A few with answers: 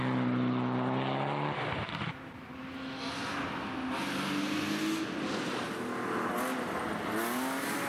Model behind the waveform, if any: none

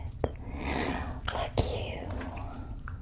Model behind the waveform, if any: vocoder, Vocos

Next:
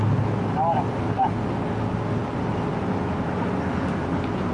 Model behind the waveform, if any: none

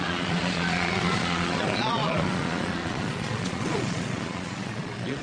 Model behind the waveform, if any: vocoder, Vocos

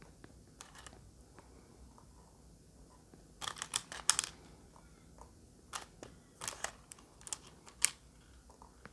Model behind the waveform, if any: none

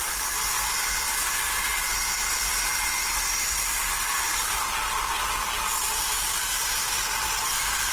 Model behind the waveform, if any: none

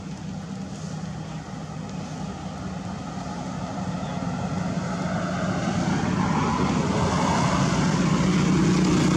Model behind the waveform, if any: none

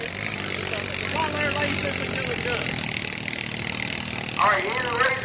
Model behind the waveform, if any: none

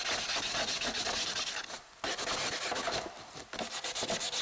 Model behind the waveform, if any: none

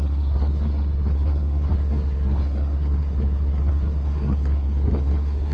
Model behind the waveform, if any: codec, SNAC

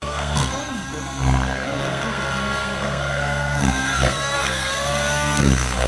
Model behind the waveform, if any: codec, SNAC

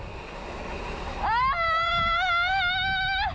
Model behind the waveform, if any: none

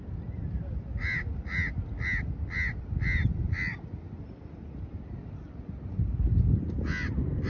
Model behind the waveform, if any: none